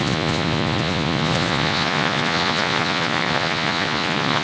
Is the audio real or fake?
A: fake